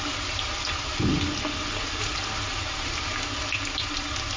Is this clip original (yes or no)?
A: yes